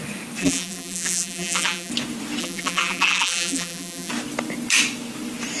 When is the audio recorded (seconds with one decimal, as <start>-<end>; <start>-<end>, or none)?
0.0-0.4; 1.9-2.4; 4.1-5.6